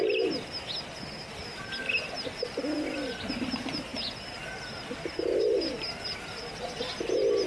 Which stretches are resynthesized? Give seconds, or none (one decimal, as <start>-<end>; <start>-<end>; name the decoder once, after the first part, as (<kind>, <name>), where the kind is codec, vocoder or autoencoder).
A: none